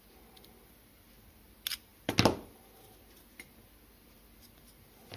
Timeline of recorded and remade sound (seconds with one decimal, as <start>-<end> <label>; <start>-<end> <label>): 0.0-5.2 recorded